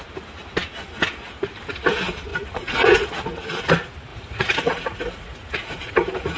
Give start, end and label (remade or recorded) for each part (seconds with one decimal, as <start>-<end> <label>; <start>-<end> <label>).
0.0-2.3 recorded; 2.3-3.1 remade; 3.1-4.1 recorded; 4.1-6.4 remade